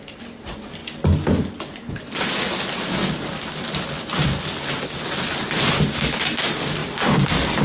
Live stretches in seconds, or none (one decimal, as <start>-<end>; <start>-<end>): 0.0-7.6